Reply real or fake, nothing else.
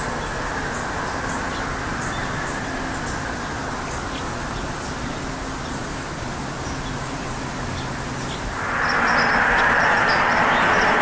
real